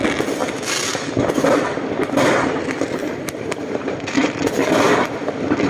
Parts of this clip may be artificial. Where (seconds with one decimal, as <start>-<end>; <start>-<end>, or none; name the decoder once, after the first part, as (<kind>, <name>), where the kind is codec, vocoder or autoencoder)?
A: 3.0-4.4 (vocoder, BigVGAN v2)